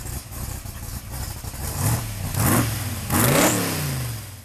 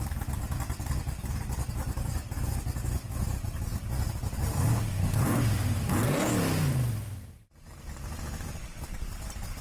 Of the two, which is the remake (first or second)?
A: second